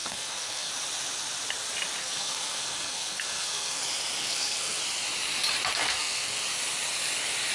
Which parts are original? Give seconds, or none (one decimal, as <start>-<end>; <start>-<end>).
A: 0.7-2.0; 3.8-4.2; 4.8-5.8; 6.4-7.5